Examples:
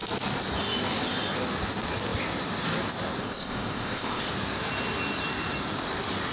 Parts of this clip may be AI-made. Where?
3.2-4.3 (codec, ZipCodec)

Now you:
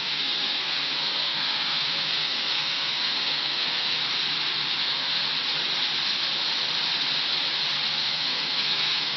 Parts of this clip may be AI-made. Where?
0.0-4.0 (codec, SNAC); 4.8-5.2; 7.9-9.2